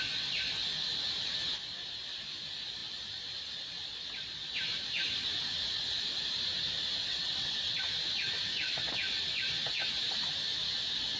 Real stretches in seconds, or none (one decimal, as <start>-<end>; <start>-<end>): 0.0-7.0; 7.8-11.2

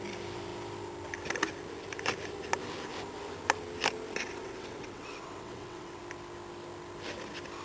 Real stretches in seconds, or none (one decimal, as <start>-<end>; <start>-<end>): 0.0-4.4; 6.0-7.6

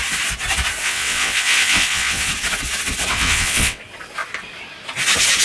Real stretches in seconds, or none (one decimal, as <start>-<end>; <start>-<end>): 0.0-0.8; 2.3-3.1; 3.8-5.4

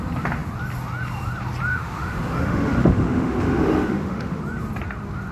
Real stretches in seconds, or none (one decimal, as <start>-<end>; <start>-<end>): 0.0-1.7; 4.4-5.3

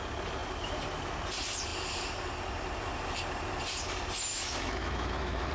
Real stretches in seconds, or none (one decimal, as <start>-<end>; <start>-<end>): 0.0-4.3

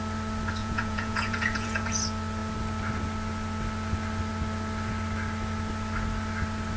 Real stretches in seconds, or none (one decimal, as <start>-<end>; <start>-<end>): 0.0-0.6; 1.9-6.8

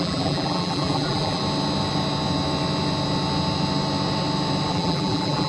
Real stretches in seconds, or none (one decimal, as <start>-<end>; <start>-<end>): 1.4-4.7

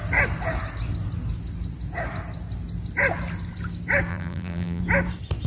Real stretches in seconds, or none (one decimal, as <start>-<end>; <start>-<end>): 0.0-4.1; 4.8-5.5